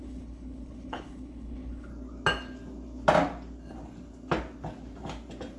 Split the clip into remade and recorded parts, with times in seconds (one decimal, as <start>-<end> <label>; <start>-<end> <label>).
0.0-1.9 remade; 1.9-5.6 recorded